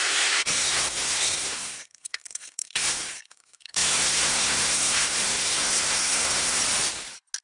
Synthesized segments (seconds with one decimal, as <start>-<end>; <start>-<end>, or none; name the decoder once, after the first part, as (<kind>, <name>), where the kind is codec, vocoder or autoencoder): 0.0-6.6 (codec, SNAC)